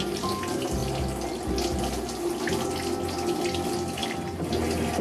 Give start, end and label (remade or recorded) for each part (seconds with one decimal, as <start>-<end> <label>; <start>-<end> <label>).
0.0-5.0 recorded